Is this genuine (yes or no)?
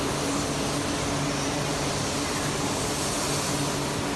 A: yes